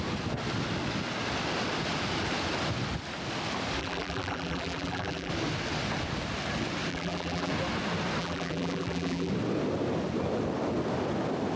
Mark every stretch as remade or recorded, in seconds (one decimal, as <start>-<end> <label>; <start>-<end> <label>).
0.0-3.8 recorded; 3.8-5.3 remade; 5.3-6.9 recorded; 6.9-7.5 remade; 7.5-8.2 recorded; 8.2-9.3 remade; 9.3-11.6 recorded